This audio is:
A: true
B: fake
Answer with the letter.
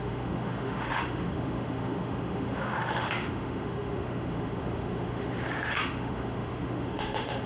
B